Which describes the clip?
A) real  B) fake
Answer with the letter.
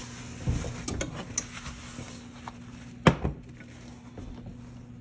A